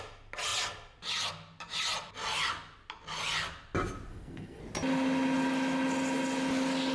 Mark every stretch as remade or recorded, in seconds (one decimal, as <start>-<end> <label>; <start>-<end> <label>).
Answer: 0.0-4.1 recorded; 4.1-4.6 remade; 4.6-6.9 recorded